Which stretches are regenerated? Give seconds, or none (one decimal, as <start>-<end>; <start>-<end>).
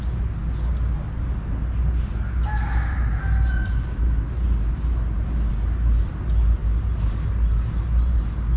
none